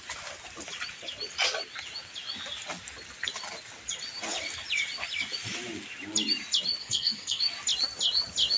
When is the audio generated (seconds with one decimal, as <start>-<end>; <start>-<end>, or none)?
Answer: 6.8-7.4